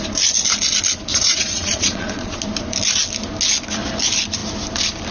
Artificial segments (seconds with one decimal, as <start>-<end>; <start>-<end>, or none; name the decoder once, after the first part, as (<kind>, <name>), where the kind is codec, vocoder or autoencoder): 1.1-2.4 (vocoder, Vocos)